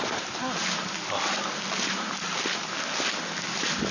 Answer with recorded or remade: recorded